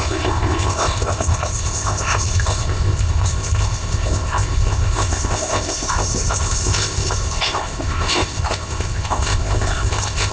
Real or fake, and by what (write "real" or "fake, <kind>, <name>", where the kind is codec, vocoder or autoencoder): fake, codec, ZipCodec